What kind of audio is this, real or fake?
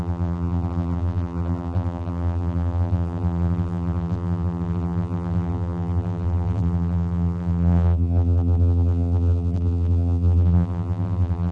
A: fake